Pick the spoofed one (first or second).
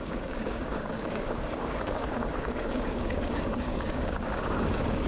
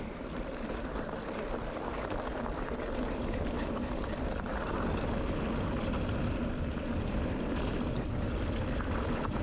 first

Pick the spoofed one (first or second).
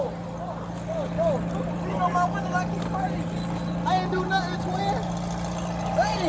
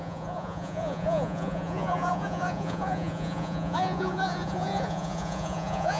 second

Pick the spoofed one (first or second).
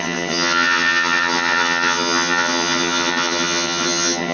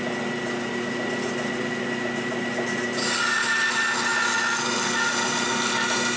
first